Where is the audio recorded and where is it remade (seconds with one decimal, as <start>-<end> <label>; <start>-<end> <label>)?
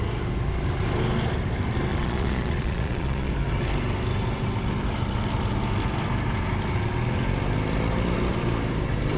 0.0-1.9 recorded; 1.9-3.3 remade; 3.3-9.2 recorded